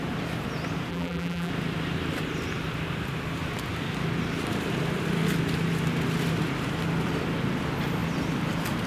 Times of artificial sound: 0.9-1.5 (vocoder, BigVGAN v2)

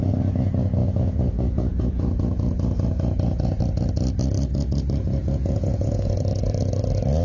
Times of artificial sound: 0.8-3.6 (vocoder, Vocos); 5.1-6.2

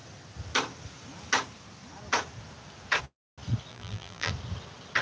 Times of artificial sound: 3.7-4.3 (vocoder, BigVGAN v2)